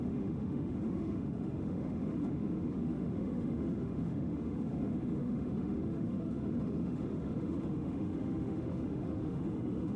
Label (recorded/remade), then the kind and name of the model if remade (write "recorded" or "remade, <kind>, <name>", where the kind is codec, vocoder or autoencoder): remade, autoencoder, DAC-VAE